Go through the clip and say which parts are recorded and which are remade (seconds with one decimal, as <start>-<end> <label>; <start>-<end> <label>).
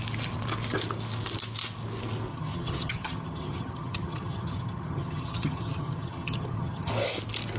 0.0-2.3 recorded; 2.3-6.9 remade; 6.9-7.6 recorded